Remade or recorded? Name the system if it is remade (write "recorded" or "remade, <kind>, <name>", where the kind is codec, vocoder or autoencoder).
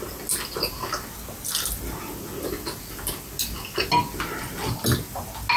recorded